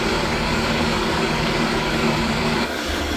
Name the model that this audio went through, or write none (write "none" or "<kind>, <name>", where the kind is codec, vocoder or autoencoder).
codec, DAC